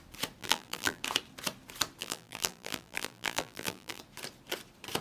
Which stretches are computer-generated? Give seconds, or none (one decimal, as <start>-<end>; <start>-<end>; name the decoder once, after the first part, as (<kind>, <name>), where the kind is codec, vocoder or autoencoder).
0.4-1.0 (vocoder, BigVGAN v2); 2.0-4.0

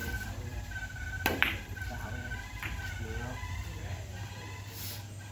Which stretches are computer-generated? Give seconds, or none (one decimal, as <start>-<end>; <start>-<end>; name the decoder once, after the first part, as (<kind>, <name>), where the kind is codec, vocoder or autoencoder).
0.0-2.4 (vocoder, BigVGAN v2)

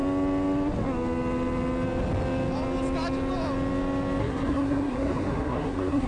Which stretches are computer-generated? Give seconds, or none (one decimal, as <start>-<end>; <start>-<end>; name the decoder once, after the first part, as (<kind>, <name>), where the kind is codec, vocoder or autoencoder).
4.2-6.1 (codec, SNAC)

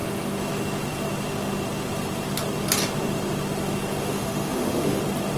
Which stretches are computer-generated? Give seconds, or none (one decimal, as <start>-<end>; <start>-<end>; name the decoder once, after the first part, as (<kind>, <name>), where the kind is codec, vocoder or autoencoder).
4.0-5.0 (autoencoder, DAC-VAE)